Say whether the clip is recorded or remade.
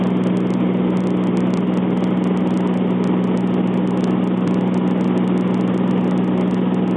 recorded